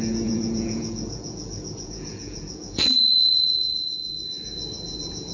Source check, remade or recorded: remade